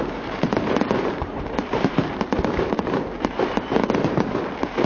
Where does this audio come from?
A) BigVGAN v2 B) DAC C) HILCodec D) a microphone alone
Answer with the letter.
A